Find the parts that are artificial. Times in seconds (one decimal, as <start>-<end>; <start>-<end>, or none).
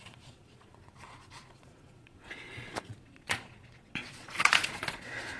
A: 0.0-5.4